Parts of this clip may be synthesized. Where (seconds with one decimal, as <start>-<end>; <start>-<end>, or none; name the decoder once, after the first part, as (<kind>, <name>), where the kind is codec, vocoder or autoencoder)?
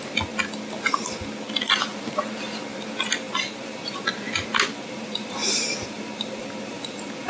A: 3.6-7.3 (vocoder, BigVGAN v2)